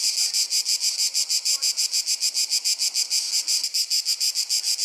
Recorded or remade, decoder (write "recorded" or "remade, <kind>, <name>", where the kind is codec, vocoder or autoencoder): recorded